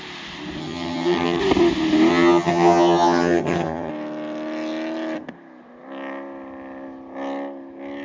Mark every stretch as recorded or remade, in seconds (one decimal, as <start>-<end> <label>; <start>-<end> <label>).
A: 0.0-0.6 recorded; 0.6-1.4 remade; 1.4-2.1 recorded; 2.1-3.9 remade; 3.9-8.0 recorded